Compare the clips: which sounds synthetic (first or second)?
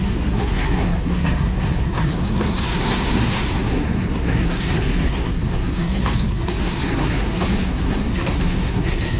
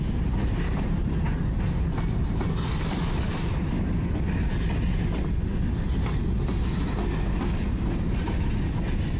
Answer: first